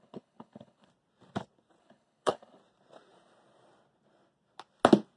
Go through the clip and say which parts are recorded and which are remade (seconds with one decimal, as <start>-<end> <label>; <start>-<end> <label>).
0.0-0.9 remade; 0.9-1.8 recorded; 1.8-2.6 remade; 2.6-5.2 recorded